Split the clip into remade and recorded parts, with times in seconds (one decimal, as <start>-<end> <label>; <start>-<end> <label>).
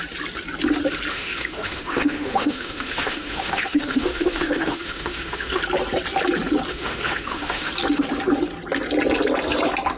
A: 0.0-1.1 recorded; 1.1-5.6 remade; 5.6-6.7 recorded; 6.7-7.7 remade; 7.7-10.0 recorded